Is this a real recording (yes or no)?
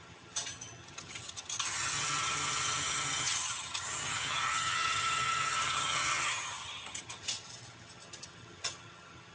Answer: no